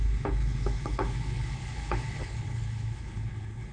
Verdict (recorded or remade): remade